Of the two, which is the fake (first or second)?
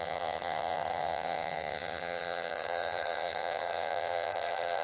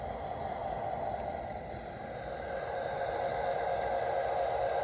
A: first